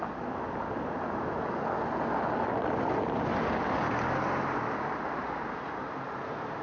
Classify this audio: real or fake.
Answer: real